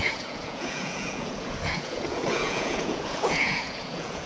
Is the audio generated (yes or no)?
yes